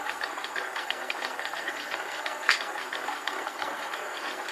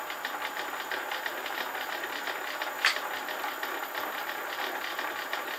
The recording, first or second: second